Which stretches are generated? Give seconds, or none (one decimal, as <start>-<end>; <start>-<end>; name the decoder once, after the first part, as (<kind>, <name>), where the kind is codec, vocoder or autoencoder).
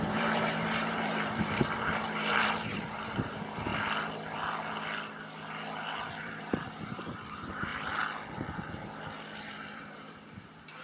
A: 0.0-3.7 (vocoder, BigVGAN v2); 6.2-7.7; 9.5-10.8